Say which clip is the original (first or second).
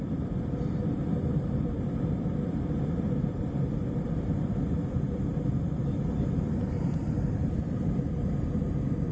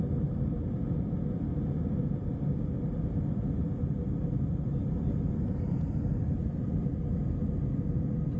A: second